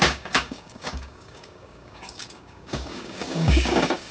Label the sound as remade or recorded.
remade